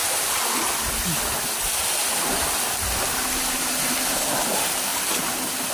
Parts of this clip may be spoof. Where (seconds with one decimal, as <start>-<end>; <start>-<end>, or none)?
0.0-0.7